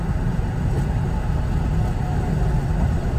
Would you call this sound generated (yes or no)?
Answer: no